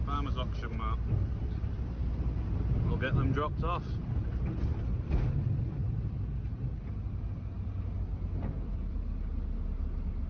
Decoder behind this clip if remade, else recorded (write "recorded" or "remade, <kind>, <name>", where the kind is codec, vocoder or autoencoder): recorded